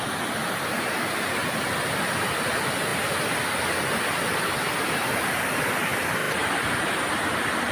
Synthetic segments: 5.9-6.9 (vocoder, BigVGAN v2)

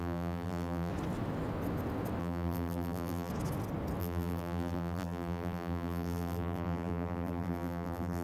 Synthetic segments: 0.0-0.9 (vocoder, BigVGAN v2); 2.2-3.3; 4.0-8.2

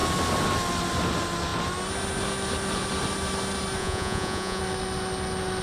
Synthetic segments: 3.8-4.6 (vocoder, Vocos)

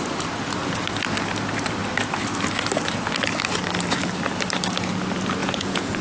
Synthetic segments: 5.4-6.0 (vocoder, Vocos)

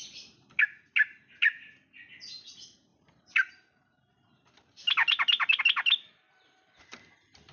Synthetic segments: none

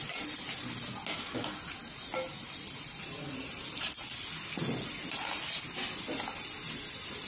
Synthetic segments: none

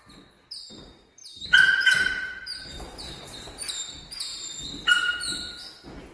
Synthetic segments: 1.2-3.7 (vocoder, BigVGAN v2); 4.3-5.2

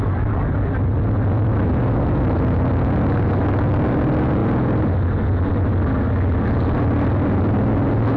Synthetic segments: none